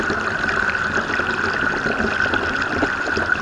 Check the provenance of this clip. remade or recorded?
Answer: recorded